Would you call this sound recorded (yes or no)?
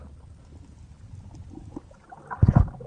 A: yes